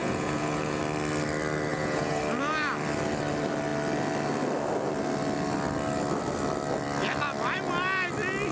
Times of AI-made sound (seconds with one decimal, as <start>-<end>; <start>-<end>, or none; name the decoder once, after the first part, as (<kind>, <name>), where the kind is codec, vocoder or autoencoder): 0.0-0.8 (vocoder, Vocos); 1.7-2.2